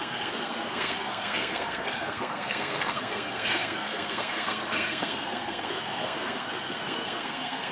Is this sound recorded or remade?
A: remade